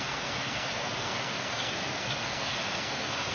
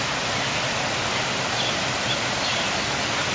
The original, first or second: second